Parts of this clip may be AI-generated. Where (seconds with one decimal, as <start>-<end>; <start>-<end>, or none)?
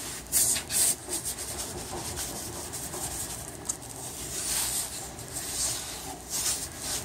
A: 1.0-5.2